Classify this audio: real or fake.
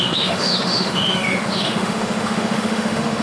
fake